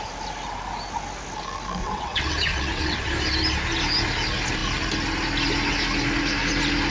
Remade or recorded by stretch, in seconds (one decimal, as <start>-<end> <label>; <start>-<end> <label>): 0.0-1.8 recorded; 1.8-3.0 remade; 3.0-6.9 recorded